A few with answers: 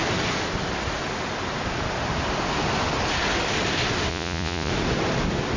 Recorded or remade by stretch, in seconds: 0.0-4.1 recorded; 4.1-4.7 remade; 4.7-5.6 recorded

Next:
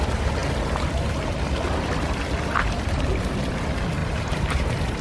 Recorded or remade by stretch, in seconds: 0.0-4.0 recorded; 4.0-5.0 remade